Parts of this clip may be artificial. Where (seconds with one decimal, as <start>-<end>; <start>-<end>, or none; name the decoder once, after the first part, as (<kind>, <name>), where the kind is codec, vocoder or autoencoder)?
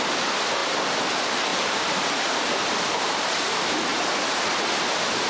1.5-3.3 (vocoder, BigVGAN v2); 3.9-4.5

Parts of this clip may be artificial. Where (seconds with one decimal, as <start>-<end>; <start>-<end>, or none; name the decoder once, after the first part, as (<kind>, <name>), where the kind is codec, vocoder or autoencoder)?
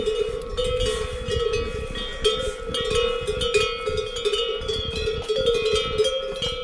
4.5-5.2 (vocoder, BigVGAN v2)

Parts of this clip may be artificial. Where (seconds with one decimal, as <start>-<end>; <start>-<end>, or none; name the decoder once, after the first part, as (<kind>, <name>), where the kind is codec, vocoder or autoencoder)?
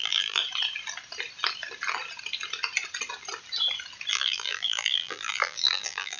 0.0-0.4 (vocoder, BigVGAN v2); 4.1-6.2